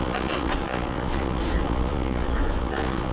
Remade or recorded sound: remade